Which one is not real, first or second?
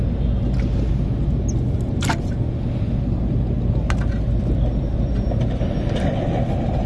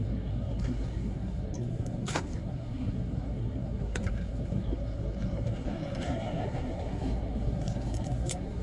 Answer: second